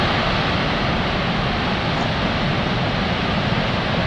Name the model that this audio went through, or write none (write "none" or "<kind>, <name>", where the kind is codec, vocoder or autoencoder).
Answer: none